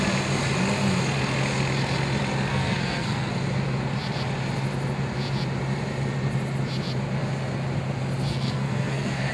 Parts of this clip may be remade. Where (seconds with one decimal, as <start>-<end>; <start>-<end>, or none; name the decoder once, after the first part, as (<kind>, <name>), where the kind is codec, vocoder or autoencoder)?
2.5-3.3 (codec, SNAC); 8.3-9.3